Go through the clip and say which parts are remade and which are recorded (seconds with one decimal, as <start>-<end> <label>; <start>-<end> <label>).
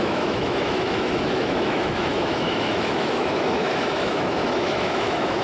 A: 0.0-5.4 remade